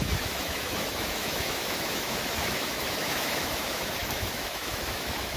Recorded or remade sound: remade